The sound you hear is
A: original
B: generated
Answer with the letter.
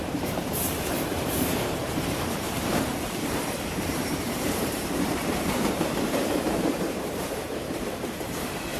B